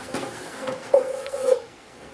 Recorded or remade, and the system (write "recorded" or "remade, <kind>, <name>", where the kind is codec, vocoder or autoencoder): remade, codec, SNAC